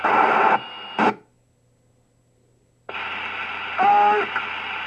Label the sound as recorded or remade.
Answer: recorded